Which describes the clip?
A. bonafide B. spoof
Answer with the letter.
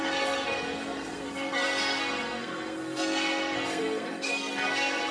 B